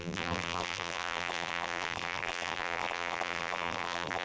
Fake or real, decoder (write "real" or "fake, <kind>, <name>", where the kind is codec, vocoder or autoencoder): fake, vocoder, BigVGAN v2